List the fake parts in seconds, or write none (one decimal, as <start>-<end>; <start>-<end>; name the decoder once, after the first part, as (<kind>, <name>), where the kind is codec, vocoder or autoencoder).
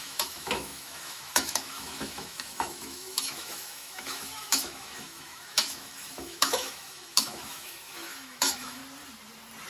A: 0.0-8.8 (autoencoder, DAC-VAE)